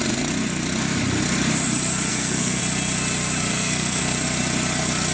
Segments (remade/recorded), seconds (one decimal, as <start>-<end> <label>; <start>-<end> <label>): 0.0-2.1 recorded; 2.1-2.6 remade; 2.6-3.5 recorded; 3.5-4.0 remade; 4.0-5.1 recorded

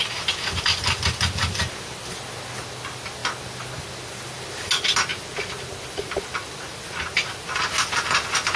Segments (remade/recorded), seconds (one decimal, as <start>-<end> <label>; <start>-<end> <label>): 0.0-8.6 recorded